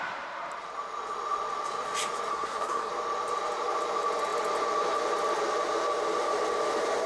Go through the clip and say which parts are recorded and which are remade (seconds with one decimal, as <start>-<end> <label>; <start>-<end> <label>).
0.0-2.3 recorded; 2.3-2.9 remade; 2.9-7.1 recorded